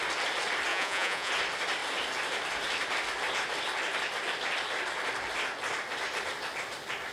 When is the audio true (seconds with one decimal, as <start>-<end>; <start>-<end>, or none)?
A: 0.0-0.7; 1.3-7.1